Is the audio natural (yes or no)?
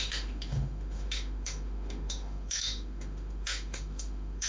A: no